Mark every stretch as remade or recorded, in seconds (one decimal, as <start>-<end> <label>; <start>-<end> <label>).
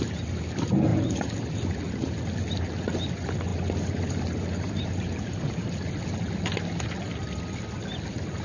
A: 0.0-3.5 recorded; 3.5-5.9 remade; 5.9-8.4 recorded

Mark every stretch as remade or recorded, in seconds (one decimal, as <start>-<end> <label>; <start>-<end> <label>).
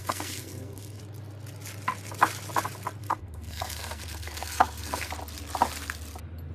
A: 0.0-1.0 remade; 1.0-3.0 recorded; 3.0-5.1 remade; 5.1-6.5 recorded